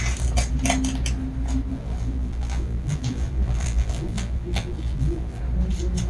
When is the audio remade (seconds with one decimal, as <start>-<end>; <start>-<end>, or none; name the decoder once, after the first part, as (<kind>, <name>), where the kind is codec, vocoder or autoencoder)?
1.7-5.4 (vocoder, BigVGAN v2)